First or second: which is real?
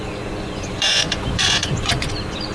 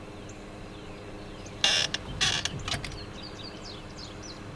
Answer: second